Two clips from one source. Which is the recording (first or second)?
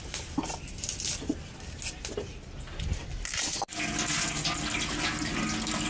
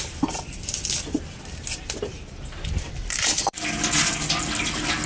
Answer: first